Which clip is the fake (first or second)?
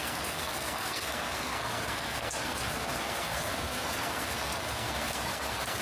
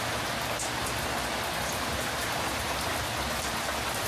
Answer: first